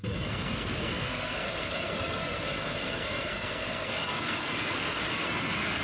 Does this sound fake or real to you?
fake